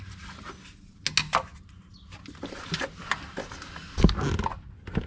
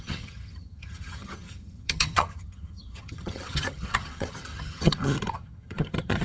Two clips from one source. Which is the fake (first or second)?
second